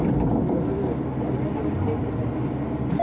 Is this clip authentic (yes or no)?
yes